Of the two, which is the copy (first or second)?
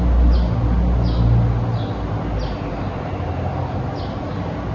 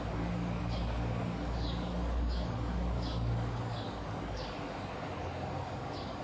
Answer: second